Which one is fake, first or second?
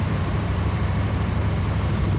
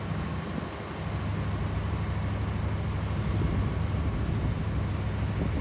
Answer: first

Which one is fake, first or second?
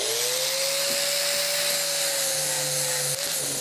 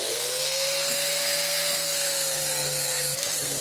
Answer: second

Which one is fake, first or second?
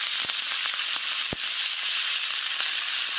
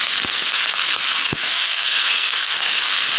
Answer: second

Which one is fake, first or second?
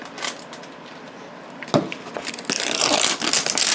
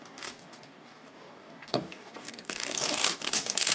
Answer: second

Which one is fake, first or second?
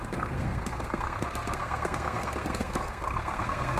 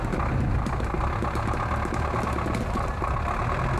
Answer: first